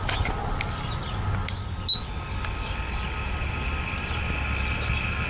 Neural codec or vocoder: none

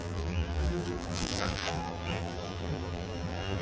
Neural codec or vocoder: vocoder, BigVGAN v2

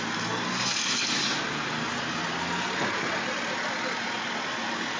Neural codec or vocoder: none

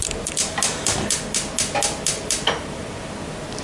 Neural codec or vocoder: none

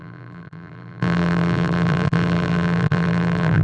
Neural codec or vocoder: vocoder, BigVGAN v2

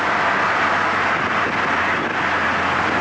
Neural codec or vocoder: none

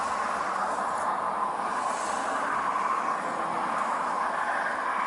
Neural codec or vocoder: none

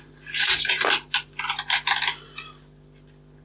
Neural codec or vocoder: vocoder, BigVGAN v2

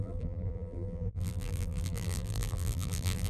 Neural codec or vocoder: vocoder, BigVGAN v2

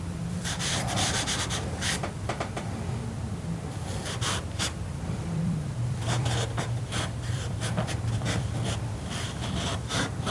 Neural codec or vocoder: vocoder, BigVGAN v2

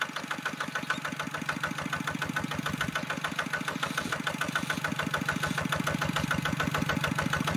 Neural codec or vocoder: none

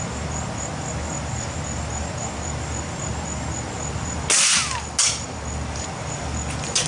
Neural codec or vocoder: none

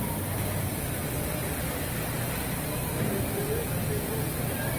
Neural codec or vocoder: none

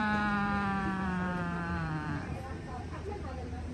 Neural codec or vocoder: vocoder, BigVGAN v2